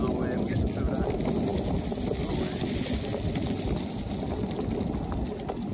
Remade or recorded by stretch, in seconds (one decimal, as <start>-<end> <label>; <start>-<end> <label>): 0.0-5.7 recorded